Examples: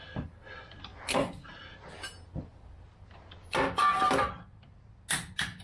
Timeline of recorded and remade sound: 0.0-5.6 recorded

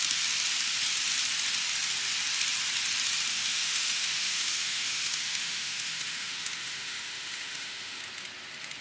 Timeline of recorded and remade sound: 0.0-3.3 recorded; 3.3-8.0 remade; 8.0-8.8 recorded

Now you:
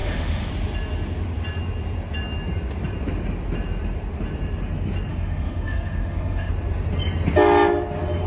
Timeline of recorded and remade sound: 0.0-0.5 remade; 0.5-5.1 recorded; 5.1-6.5 remade; 6.5-8.3 recorded

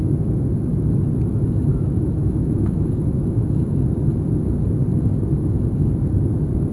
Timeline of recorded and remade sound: 0.0-1.7 recorded; 1.7-3.8 remade; 3.8-6.7 recorded